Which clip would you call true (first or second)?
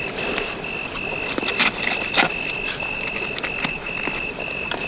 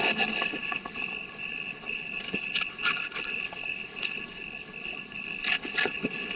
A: first